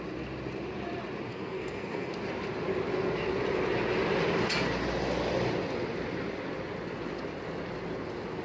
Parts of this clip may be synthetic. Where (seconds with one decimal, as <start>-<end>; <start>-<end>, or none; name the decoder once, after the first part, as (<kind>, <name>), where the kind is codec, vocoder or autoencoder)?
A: 1.3-2.1 (codec, SNAC)